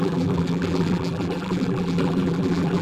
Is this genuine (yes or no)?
no